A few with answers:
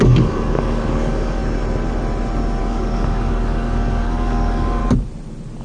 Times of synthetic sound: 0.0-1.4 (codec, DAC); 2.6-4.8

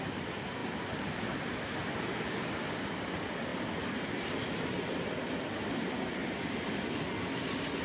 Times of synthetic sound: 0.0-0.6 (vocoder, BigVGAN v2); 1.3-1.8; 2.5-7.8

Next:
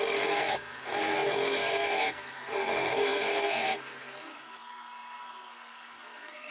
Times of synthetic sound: 0.0-6.5 (codec, SNAC)

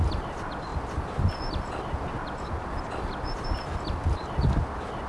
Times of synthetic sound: none

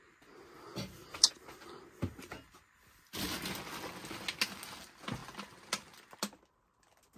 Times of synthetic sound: none

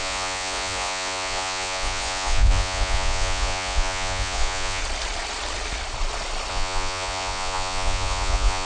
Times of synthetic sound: 0.0-4.8 (vocoder, Vocos); 6.5-8.7

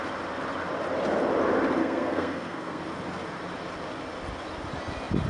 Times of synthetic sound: 1.8-2.8 (codec, SNAC)

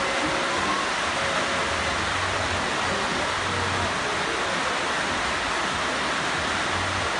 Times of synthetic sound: none